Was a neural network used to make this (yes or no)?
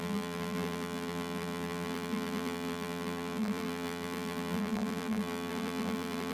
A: yes